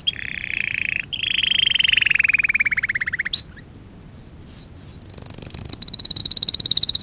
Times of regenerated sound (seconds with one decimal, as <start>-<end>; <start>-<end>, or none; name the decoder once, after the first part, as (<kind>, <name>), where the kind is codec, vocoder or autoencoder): 0.0-1.4 (vocoder, BigVGAN v2); 5.6-6.2